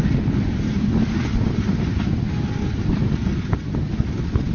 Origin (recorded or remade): recorded